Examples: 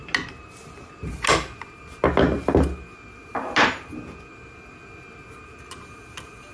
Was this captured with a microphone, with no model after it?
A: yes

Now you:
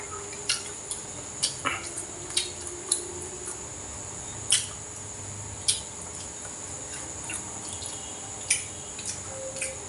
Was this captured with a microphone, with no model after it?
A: yes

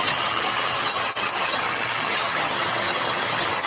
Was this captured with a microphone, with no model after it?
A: no